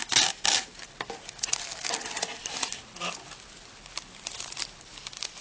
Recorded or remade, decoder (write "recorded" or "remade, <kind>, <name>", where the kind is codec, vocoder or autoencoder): recorded